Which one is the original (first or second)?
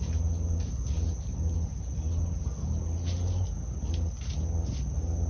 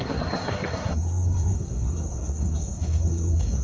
first